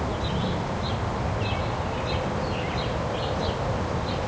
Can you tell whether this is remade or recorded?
recorded